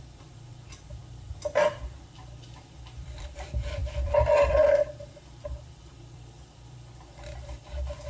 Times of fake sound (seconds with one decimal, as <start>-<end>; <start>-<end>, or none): 0.0-1.0; 2.6-8.1